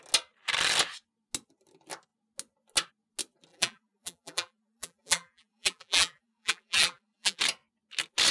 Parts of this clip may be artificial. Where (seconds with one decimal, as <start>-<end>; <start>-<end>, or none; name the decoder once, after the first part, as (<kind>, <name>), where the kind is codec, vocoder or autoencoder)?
3.5-7.4 (vocoder, BigVGAN v2)